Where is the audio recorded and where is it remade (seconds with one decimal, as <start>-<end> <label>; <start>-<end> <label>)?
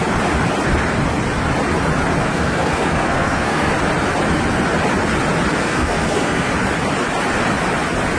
0.0-2.2 recorded; 2.2-3.7 remade; 3.7-5.6 recorded; 5.6-6.5 remade; 6.5-8.2 recorded